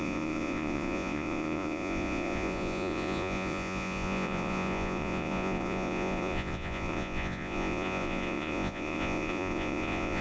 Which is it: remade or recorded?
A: remade